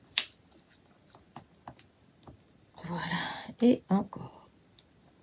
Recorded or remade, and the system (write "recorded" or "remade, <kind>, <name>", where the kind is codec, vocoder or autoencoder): recorded